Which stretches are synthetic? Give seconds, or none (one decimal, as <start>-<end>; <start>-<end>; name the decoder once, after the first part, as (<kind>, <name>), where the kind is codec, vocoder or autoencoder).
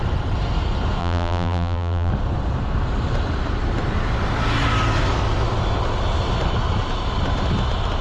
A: 1.0-2.1 (vocoder, BigVGAN v2)